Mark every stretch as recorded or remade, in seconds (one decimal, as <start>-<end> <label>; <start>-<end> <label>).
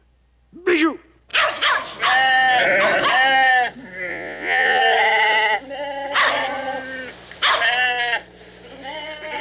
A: 0.0-4.1 recorded; 4.1-4.8 remade; 4.8-9.4 recorded